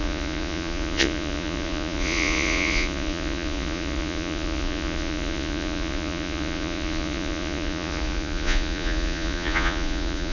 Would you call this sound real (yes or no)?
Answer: no